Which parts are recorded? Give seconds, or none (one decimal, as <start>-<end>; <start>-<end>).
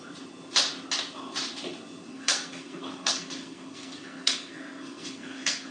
0.0-2.1